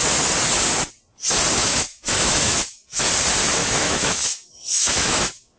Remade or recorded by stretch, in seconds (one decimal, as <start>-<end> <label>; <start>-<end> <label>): 0.0-1.6 recorded; 1.6-3.1 remade; 3.1-3.6 recorded; 3.6-5.6 remade